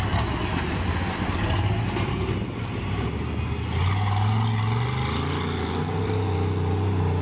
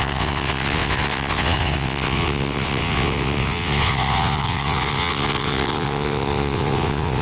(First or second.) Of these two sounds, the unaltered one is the first